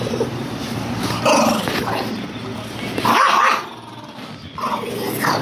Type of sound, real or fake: real